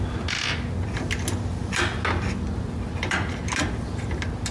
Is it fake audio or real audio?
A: real